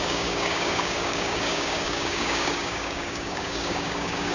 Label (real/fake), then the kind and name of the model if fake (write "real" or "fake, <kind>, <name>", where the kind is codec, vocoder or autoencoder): fake, codec, DAC